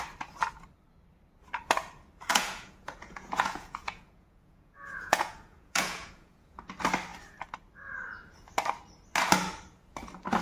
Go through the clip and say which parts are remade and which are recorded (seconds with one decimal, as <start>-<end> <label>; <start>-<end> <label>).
0.0-2.3 recorded; 2.3-6.6 remade; 6.6-10.4 recorded